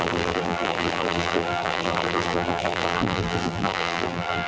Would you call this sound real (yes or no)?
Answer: no